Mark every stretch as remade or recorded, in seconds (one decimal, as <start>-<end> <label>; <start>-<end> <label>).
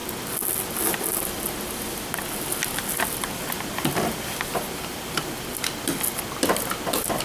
0.0-7.2 recorded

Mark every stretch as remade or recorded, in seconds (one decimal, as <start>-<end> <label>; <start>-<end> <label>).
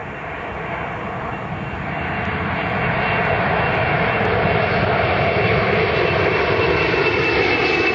0.0-7.9 remade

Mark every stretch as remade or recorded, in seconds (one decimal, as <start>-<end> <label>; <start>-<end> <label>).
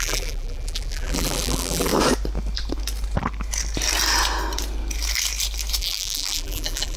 0.0-1.9 remade; 1.9-5.8 recorded; 5.8-7.0 remade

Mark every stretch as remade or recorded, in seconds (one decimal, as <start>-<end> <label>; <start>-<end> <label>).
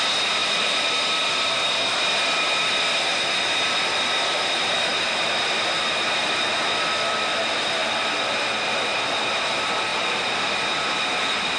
0.0-0.4 recorded; 0.4-0.9 remade; 0.9-7.8 recorded; 7.8-9.0 remade; 9.0-9.9 recorded; 9.9-10.6 remade; 10.6-11.6 recorded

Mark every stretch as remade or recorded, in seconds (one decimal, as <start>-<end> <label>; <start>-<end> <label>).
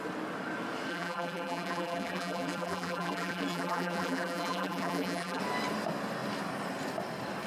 0.0-0.9 recorded; 0.9-5.4 remade; 5.4-7.5 recorded